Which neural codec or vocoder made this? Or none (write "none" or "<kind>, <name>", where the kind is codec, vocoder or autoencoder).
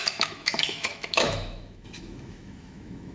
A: autoencoder, DAC-VAE